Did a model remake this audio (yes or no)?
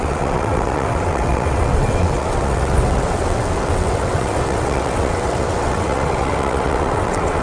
yes